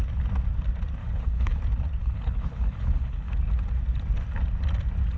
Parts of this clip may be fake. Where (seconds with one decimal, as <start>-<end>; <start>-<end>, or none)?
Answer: 1.0-1.6; 2.0-3.3